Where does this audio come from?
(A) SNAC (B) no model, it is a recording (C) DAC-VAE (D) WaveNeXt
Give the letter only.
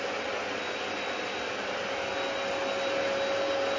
B